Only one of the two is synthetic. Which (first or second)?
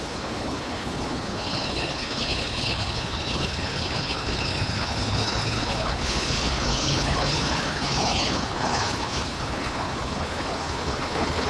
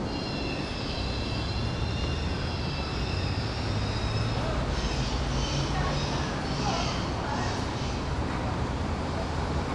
first